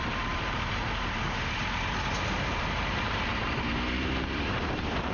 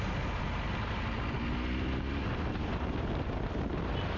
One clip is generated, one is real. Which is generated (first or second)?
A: first